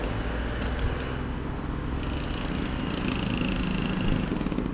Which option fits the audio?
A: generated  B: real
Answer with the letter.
B